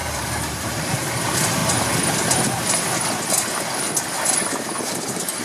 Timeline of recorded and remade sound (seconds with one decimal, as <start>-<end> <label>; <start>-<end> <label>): 0.0-0.5 recorded; 0.5-1.6 remade; 1.6-4.8 recorded; 4.8-5.4 remade